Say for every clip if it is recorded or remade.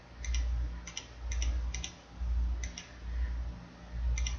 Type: recorded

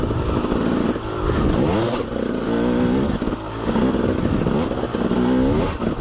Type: recorded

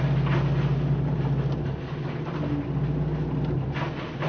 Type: recorded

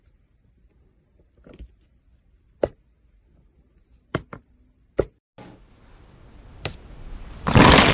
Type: recorded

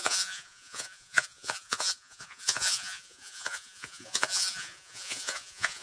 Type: remade